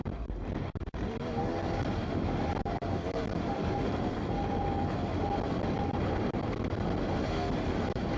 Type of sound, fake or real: real